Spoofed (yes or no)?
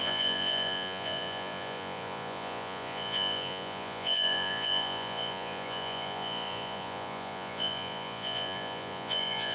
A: yes